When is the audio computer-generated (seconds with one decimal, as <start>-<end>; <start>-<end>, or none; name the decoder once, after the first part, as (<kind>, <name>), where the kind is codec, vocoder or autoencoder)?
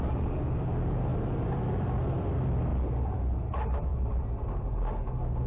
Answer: none